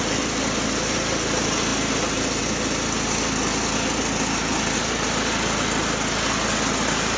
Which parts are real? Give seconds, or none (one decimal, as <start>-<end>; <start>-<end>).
0.0-7.2